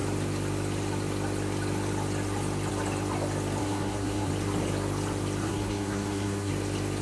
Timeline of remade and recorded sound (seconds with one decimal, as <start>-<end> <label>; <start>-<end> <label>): 0.0-3.6 recorded; 3.6-4.3 remade; 4.3-5.4 recorded; 5.4-6.5 remade; 6.5-7.0 recorded